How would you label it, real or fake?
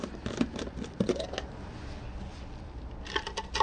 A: real